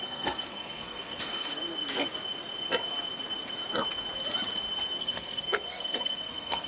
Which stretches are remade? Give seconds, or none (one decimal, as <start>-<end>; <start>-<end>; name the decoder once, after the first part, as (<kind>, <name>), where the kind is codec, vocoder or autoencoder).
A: 0.0-1.5 (codec, SNAC); 5.0-6.7